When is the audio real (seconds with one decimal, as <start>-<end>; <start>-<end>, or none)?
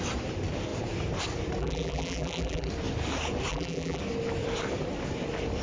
0.0-1.6; 2.7-3.5; 4.0-5.6